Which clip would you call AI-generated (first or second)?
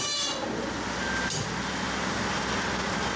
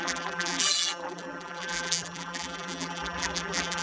second